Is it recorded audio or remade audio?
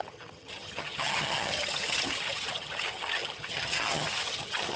remade